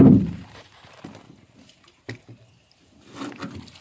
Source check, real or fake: real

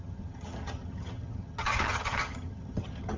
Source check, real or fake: fake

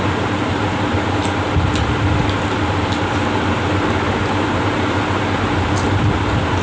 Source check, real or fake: real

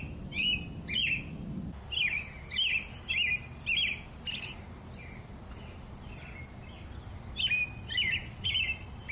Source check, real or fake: real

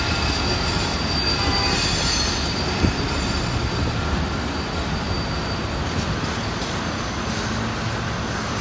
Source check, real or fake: real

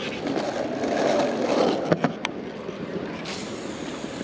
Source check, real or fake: real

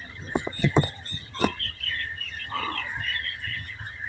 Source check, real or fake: fake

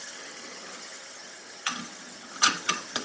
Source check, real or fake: fake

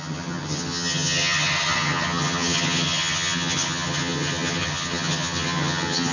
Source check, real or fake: fake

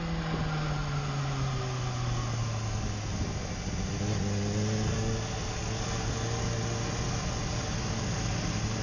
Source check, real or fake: real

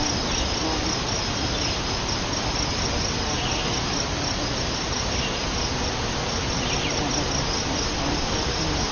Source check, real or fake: real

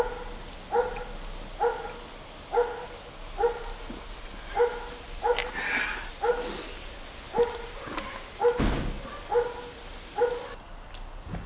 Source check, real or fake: real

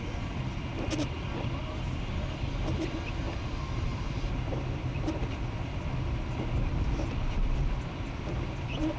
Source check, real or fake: real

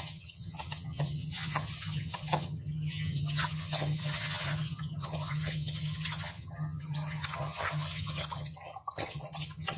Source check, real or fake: fake